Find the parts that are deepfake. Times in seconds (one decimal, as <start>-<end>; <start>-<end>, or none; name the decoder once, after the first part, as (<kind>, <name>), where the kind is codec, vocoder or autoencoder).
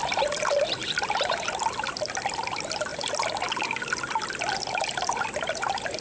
0.0-2.9 (vocoder, BigVGAN v2); 5.2-6.0